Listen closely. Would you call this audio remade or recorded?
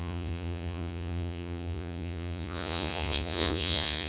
remade